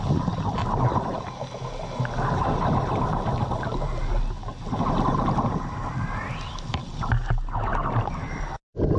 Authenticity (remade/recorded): recorded